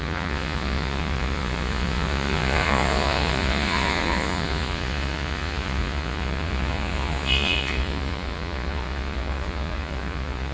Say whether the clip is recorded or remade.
remade